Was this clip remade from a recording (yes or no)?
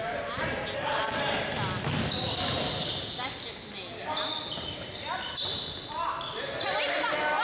no